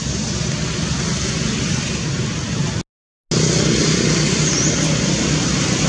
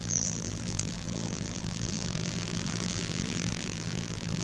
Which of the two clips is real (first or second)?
first